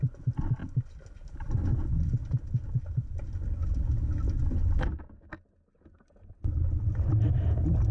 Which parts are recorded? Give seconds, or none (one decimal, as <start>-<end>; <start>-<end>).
0.0-7.9